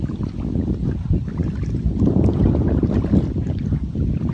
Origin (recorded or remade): recorded